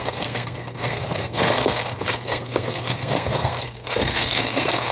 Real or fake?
fake